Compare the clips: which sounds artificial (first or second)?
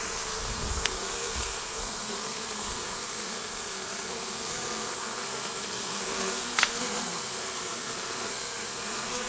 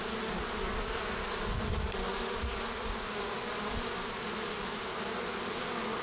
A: first